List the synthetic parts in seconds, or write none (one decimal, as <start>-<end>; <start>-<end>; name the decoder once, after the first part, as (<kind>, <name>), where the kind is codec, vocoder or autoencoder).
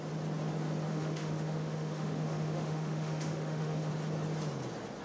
0.9-3.9 (autoencoder, DAC-VAE)